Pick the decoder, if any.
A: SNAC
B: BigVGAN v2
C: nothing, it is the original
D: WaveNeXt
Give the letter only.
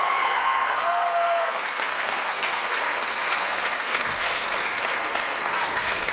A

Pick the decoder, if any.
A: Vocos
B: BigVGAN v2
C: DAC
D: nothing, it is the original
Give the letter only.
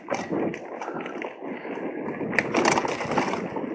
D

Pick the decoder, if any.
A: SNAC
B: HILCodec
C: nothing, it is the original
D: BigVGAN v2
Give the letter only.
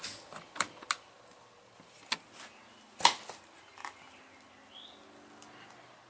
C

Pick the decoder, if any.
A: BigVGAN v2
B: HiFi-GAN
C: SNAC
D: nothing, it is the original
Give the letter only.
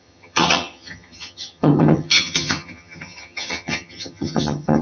B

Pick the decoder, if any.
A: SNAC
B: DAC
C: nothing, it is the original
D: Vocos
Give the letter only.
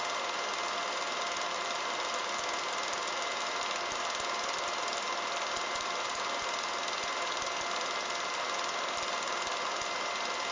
C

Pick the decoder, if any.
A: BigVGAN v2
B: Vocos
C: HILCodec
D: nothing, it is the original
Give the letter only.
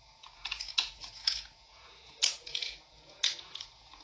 B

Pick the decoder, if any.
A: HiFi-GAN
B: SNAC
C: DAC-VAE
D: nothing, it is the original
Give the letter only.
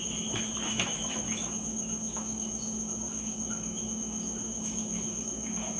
C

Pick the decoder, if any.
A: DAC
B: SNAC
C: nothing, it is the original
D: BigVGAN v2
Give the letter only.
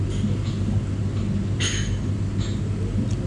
C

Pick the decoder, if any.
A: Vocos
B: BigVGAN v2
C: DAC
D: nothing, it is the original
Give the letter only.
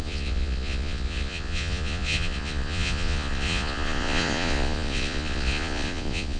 A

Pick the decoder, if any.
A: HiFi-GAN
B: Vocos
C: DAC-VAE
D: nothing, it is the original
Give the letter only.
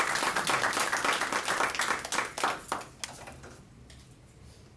D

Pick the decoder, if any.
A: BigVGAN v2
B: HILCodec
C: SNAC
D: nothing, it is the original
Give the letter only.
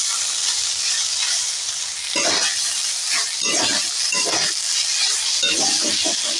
D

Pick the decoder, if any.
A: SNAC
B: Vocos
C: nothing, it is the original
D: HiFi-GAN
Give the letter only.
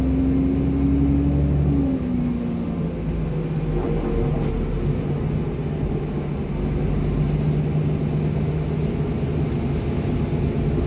C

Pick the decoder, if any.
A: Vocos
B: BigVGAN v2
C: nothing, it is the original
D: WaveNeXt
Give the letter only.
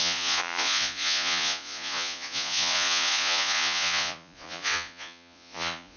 A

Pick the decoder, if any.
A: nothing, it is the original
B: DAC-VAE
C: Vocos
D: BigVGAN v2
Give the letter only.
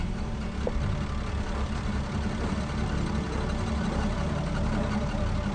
A